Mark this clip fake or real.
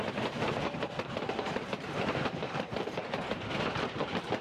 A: fake